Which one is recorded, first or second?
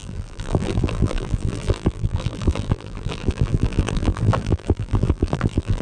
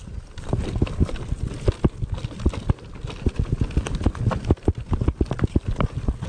second